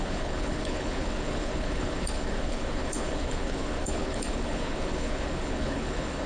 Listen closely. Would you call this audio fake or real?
fake